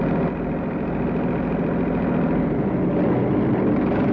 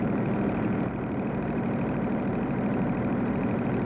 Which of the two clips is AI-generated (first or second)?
second